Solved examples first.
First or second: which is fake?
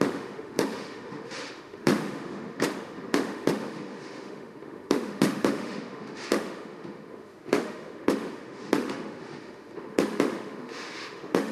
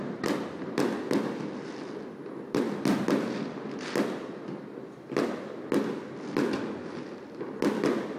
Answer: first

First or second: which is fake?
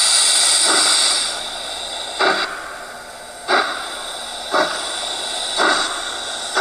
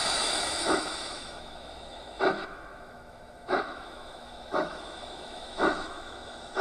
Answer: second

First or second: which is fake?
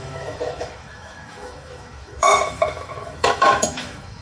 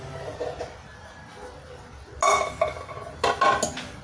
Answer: first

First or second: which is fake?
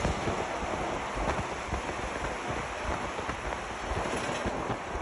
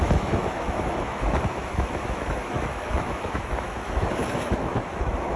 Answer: second